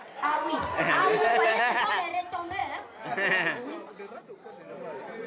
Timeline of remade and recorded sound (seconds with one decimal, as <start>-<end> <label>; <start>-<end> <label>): 0.0-1.3 recorded; 1.3-1.8 remade; 1.8-5.3 recorded